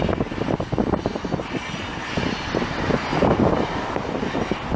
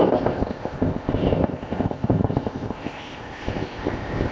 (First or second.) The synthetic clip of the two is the second